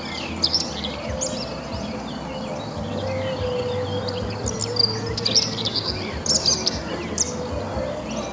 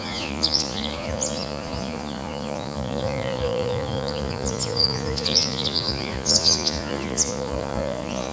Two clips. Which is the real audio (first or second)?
first